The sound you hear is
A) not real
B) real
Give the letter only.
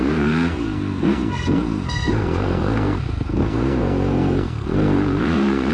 A